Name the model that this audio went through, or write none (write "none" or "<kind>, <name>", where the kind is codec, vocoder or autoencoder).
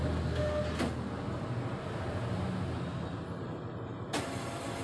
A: none